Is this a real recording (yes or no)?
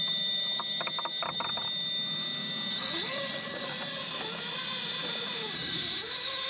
yes